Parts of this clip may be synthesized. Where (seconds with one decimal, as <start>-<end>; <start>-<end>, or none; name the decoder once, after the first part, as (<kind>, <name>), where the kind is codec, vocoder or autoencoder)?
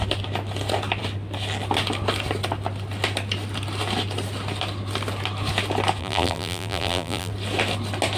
6.0-7.3 (vocoder, BigVGAN v2)